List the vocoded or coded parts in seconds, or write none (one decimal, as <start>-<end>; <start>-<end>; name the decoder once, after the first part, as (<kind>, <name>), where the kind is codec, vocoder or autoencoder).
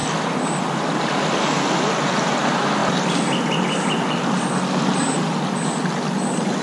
none